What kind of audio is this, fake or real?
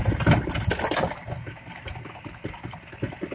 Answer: real